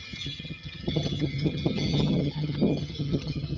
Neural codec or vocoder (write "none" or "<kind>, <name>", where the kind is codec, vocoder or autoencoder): vocoder, HiFi-GAN